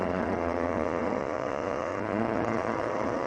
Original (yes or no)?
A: no